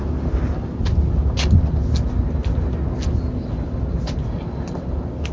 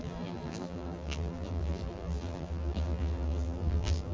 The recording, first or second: first